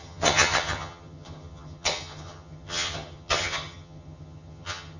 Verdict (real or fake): fake